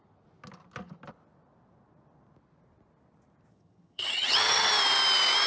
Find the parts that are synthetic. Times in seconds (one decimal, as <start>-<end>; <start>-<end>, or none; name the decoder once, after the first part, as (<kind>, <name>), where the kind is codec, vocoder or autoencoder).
3.5-4.7 (vocoder, HiFi-GAN)